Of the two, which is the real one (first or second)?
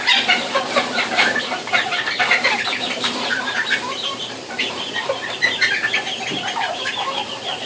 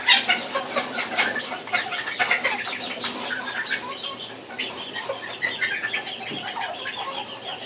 second